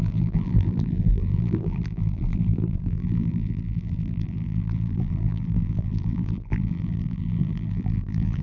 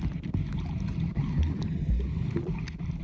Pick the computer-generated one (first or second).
first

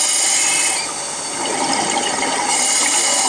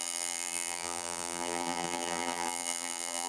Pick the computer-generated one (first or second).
second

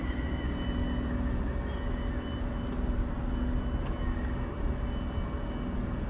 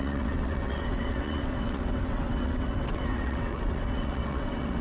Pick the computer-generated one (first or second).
second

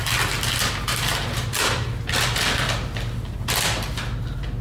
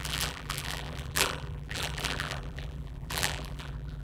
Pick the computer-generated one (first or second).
second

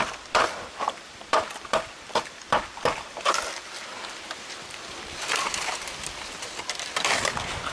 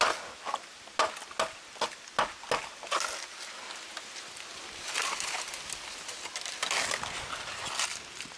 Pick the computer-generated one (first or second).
first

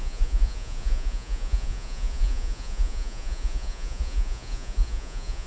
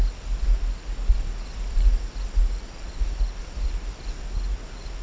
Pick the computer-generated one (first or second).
first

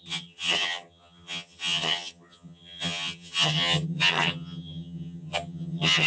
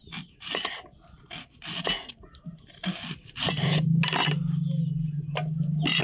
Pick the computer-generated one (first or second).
first